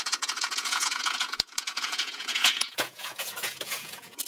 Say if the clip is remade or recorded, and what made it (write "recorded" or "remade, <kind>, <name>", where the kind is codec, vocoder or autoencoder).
remade, vocoder, Vocos